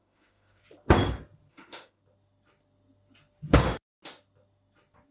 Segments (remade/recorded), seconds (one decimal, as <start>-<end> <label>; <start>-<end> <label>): 0.0-0.6 remade; 0.6-1.5 recorded; 1.5-2.0 remade; 2.0-5.1 recorded